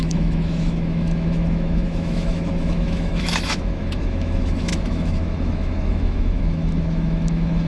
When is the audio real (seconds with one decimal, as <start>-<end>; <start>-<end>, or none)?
none